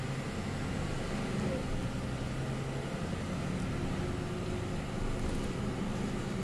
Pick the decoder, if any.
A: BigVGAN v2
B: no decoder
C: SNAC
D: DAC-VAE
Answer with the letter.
B